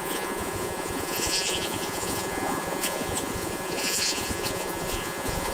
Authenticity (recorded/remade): remade